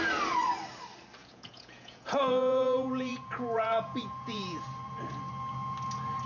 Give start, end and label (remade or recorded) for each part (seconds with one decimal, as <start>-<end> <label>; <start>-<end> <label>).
0.0-1.2 recorded; 1.2-4.6 remade; 4.6-6.3 recorded